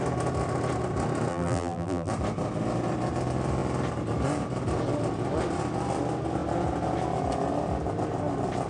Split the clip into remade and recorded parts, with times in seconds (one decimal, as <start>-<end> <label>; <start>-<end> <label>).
0.0-1.3 recorded; 1.3-2.1 remade; 2.1-8.7 recorded